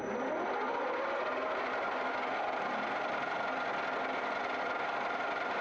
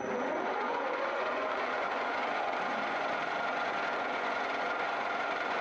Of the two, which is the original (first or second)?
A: first